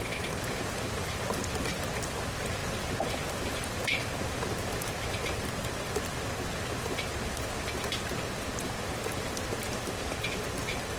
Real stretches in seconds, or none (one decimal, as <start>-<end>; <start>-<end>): 0.0-2.6; 3.5-11.0